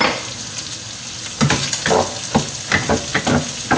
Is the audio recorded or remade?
recorded